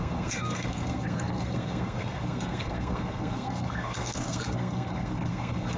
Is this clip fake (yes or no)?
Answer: yes